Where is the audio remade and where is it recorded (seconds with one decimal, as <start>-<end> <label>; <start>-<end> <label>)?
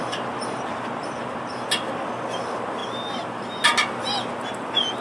0.0-5.0 recorded